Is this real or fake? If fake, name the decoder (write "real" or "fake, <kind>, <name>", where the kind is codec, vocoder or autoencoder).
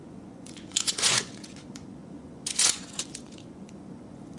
fake, vocoder, Vocos